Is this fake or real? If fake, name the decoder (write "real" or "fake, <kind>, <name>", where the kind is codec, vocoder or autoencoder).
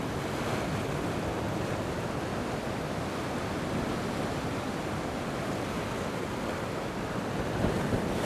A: real